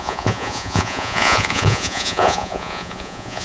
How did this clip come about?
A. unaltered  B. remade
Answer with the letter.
B